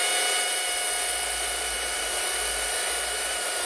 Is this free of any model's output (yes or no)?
yes